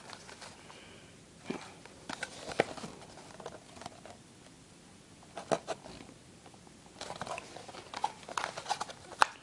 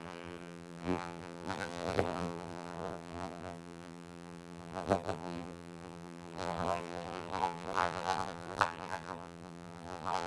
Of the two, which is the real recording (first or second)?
first